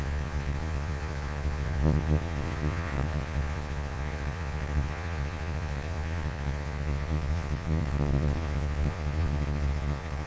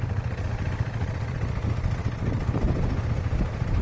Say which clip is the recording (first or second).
second